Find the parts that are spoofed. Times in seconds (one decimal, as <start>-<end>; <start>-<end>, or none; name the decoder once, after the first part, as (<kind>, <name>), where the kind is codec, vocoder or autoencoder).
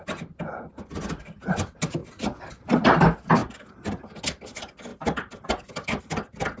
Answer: none